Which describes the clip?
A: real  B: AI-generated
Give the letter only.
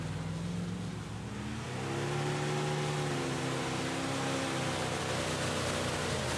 A